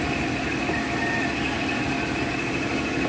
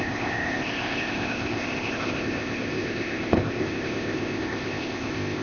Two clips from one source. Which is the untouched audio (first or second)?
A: first